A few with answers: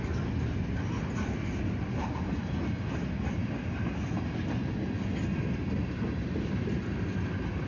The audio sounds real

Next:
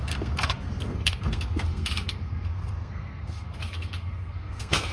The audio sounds fake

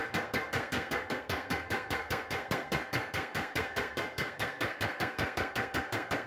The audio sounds fake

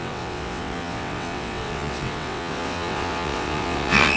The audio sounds fake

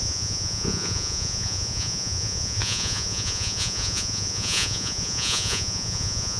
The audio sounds fake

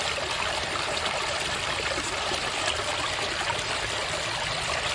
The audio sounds real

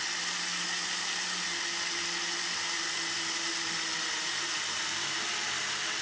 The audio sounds real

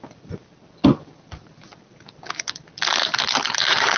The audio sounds real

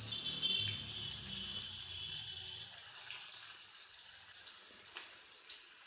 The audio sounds real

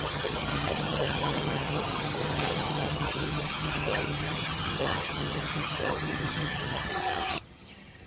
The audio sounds fake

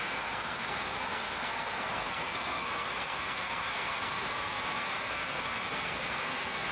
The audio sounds fake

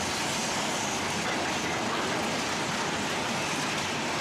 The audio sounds real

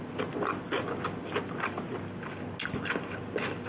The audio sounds real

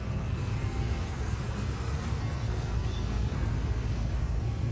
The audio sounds fake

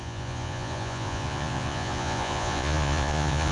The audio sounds fake